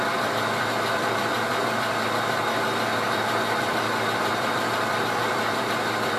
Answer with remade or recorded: remade